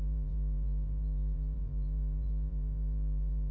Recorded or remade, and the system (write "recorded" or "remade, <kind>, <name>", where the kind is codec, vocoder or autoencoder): remade, vocoder, BigVGAN v2